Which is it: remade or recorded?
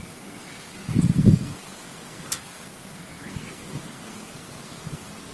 remade